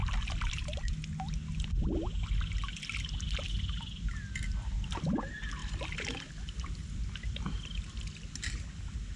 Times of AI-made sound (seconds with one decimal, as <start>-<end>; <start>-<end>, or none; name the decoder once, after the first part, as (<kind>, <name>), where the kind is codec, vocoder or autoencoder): none